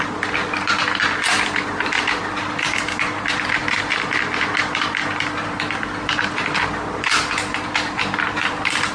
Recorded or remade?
recorded